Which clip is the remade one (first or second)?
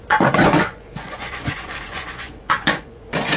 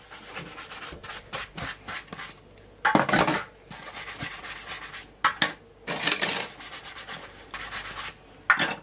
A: first